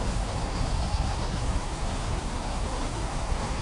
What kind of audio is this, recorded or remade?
remade